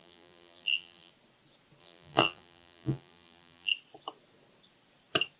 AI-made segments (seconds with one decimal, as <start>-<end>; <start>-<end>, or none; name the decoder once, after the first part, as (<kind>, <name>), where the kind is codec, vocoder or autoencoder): 0.0-1.1 (vocoder, BigVGAN v2); 1.8-3.7